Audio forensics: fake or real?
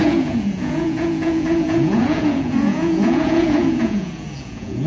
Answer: fake